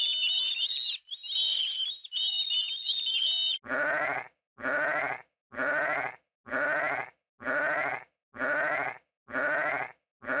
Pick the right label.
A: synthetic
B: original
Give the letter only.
B